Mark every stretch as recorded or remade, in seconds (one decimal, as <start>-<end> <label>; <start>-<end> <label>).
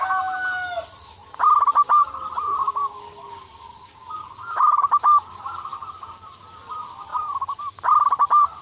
0.0-2.6 recorded; 2.6-5.4 remade; 5.4-8.6 recorded